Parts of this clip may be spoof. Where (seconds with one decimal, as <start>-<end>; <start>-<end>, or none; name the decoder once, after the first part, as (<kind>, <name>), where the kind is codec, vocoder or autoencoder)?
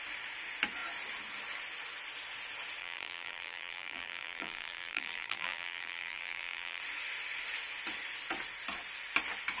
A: 2.8-6.8 (vocoder, BigVGAN v2)